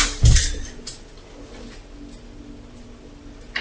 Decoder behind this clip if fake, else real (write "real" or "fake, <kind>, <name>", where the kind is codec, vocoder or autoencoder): real